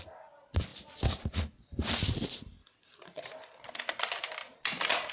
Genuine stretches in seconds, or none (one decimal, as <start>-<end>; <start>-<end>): 0.0-5.1